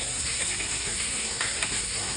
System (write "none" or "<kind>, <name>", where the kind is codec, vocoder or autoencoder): codec, SNAC